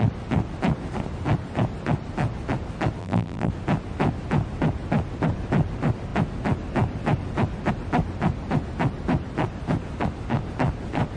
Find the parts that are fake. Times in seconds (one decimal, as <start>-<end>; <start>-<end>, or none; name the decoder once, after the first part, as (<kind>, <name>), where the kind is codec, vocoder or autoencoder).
3.0-3.5 (vocoder, BigVGAN v2)